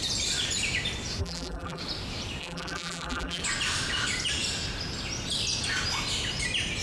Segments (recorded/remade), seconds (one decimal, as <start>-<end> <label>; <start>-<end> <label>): 0.0-1.2 recorded; 1.2-1.8 remade; 1.8-2.4 recorded; 2.4-3.4 remade; 3.4-6.8 recorded

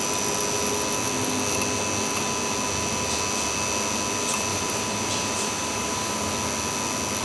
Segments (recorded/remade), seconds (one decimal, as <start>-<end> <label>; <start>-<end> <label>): 0.0-4.5 recorded; 4.5-6.3 remade; 6.3-7.2 recorded

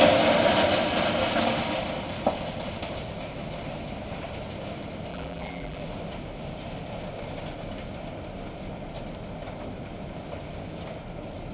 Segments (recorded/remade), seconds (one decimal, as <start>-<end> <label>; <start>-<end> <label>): 0.0-5.1 recorded; 5.1-5.8 remade; 5.8-11.5 recorded

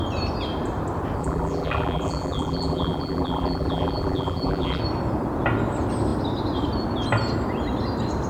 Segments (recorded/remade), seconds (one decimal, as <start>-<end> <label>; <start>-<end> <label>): 0.0-1.2 recorded; 1.2-4.8 remade; 4.8-8.3 recorded